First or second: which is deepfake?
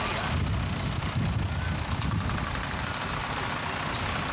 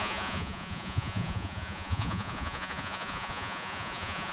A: second